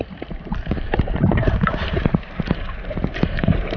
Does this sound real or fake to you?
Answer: fake